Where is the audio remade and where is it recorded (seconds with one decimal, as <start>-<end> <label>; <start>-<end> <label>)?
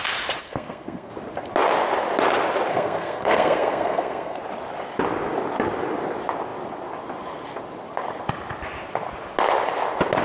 0.0-0.4 recorded; 0.4-1.1 remade; 1.1-2.7 recorded; 2.7-4.4 remade; 4.4-10.2 recorded